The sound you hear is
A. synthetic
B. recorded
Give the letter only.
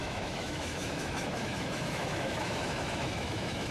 A